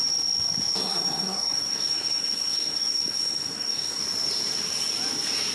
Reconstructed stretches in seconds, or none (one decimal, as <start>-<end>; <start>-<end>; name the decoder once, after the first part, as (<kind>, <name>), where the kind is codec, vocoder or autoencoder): 0.8-4.0 (codec, SNAC)

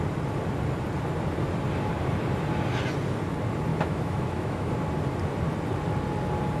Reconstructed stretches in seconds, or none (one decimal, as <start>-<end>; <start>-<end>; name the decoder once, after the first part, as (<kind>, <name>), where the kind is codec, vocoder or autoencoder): 3.7-4.7 (autoencoder, DAC-VAE)

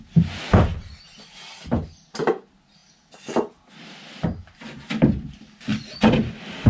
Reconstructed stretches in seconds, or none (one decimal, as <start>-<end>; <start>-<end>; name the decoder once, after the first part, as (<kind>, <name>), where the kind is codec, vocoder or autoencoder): none

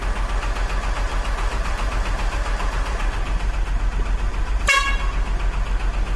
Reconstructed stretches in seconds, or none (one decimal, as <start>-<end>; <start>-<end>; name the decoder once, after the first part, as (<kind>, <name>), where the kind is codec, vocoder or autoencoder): 1.1-3.8 (vocoder, BigVGAN v2); 4.3-4.8

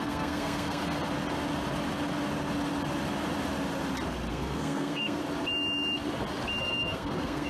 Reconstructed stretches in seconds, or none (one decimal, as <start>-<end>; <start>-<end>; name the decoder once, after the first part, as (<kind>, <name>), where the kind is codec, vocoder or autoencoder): 0.0-0.8 (codec, SNAC); 4.3-5.2; 6.6-7.5

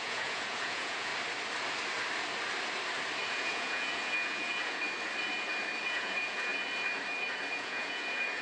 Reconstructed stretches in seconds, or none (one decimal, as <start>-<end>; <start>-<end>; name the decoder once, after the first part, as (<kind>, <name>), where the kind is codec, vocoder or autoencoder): 0.0-1.1 (vocoder, Vocos); 3.3-4.8; 5.8-6.5; 7.5-8.4

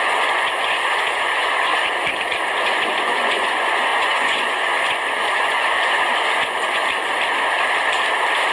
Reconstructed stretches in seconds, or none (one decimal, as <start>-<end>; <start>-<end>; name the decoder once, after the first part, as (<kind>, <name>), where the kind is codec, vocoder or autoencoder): 0.0-1.7 (vocoder, Vocos); 2.6-6.8

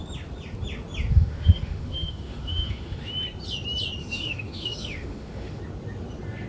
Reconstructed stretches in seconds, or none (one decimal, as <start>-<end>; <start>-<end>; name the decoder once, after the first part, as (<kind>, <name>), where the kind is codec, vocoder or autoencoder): 1.1-3.1 (autoencoder, DAC-VAE); 4.0-5.6